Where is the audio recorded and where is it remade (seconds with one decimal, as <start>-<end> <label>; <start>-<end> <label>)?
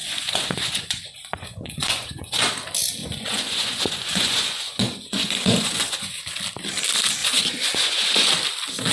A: 0.0-2.4 remade; 2.4-3.0 recorded; 3.0-6.2 remade; 6.2-7.2 recorded; 7.2-8.3 remade; 8.3-8.9 recorded